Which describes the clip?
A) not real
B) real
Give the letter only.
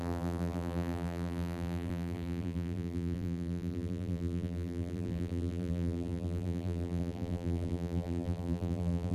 A